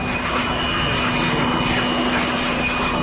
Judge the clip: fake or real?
real